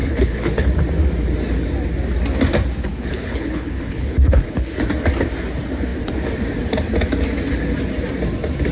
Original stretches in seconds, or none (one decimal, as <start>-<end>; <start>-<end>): 0.7-2.9; 4.7-8.7